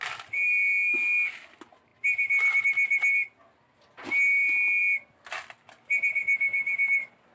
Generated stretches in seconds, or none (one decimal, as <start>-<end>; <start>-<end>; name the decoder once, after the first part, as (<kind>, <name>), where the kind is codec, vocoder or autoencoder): none